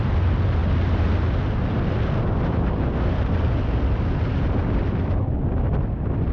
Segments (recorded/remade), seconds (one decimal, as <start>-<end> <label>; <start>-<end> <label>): 0.0-6.3 recorded